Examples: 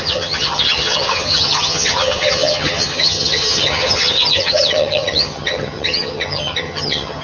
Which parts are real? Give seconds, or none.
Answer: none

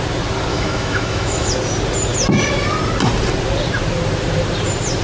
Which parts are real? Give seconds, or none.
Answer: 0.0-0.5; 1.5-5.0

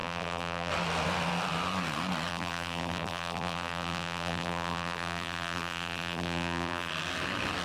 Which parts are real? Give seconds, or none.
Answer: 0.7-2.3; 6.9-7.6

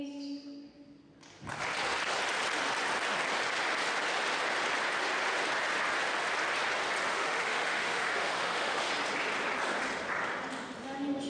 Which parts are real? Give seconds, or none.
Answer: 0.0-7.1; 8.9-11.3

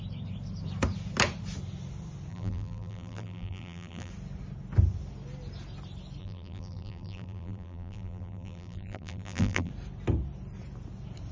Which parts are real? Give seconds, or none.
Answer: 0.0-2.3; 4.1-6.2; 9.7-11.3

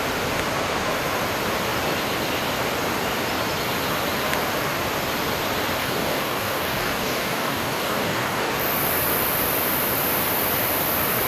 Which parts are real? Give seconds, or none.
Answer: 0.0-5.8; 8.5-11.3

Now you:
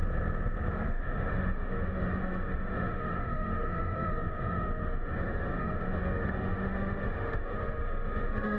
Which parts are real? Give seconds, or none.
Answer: 0.0-0.7